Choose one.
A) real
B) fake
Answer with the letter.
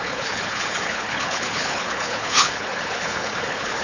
B